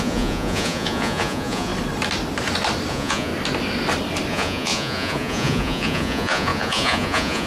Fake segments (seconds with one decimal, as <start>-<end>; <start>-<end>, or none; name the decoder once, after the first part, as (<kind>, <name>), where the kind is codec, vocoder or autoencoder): 0.0-1.7 (vocoder, Vocos); 2.9-3.3; 4.3-7.5